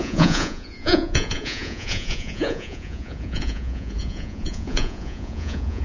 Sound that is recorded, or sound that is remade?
remade